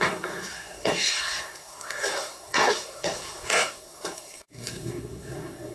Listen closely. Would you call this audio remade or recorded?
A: remade